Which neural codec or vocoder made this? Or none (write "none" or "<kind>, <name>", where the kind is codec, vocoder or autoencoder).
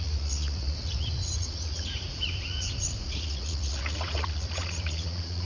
vocoder, Vocos